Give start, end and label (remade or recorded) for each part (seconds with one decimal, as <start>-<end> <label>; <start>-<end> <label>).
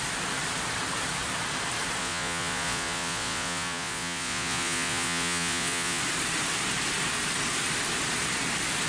0.0-2.0 recorded; 2.0-6.0 remade; 6.0-8.9 recorded